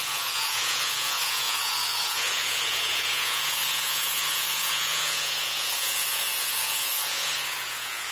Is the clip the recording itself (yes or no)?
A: no